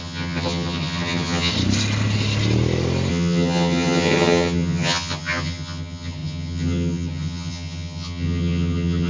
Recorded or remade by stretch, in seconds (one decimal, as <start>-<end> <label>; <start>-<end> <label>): 0.0-1.5 remade; 1.5-3.1 recorded; 3.1-9.1 remade